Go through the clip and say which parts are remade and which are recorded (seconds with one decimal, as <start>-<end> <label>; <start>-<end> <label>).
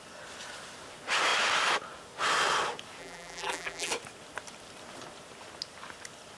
0.0-3.0 recorded; 3.0-3.9 remade; 3.9-6.4 recorded